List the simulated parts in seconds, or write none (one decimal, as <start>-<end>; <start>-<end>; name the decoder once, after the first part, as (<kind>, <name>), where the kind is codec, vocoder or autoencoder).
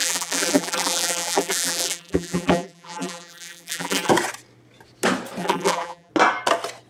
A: 0.0-4.1 (vocoder, BigVGAN v2); 5.4-6.1